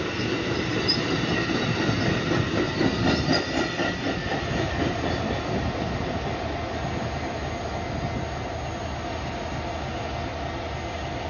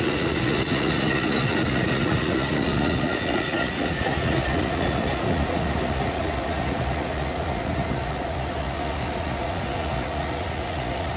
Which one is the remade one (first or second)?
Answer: second